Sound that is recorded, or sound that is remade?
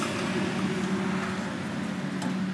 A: recorded